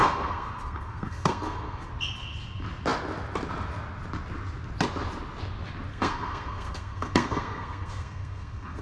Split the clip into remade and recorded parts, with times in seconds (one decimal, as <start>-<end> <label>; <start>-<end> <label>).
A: 0.0-1.9 remade; 1.9-5.9 recorded; 5.9-8.8 remade